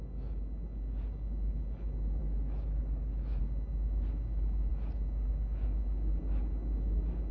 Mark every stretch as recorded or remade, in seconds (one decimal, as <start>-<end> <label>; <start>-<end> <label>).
0.0-2.2 recorded; 2.2-3.4 remade; 3.4-7.3 recorded